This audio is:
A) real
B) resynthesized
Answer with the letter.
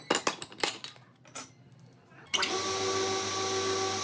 A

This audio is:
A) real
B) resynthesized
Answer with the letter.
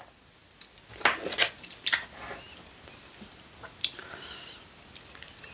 A